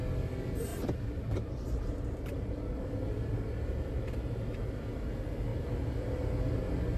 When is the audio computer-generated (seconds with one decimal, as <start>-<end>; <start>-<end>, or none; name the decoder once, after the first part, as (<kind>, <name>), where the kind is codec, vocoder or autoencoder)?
0.7-4.7 (vocoder, BigVGAN v2); 5.5-6.4